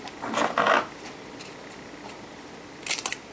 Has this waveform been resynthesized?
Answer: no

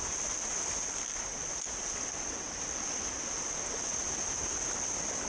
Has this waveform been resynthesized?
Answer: no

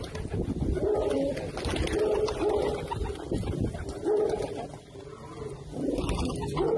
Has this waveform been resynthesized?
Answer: no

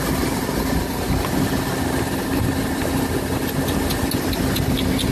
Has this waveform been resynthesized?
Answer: no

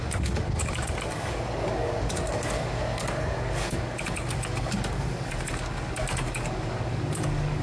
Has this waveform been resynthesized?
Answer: yes